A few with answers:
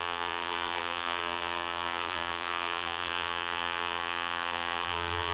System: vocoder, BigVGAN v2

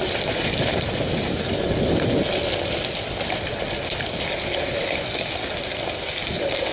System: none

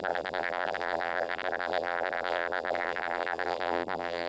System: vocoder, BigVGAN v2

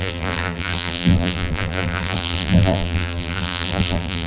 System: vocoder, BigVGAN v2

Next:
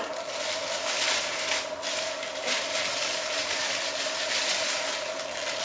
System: vocoder, BigVGAN v2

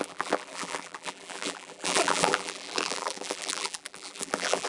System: vocoder, BigVGAN v2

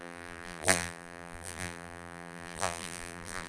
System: vocoder, BigVGAN v2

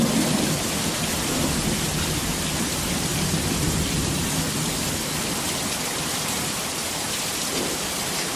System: vocoder, BigVGAN v2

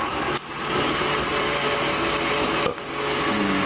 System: none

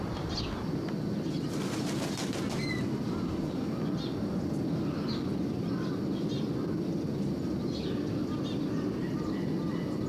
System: none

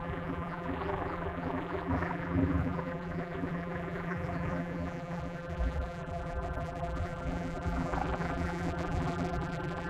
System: vocoder, BigVGAN v2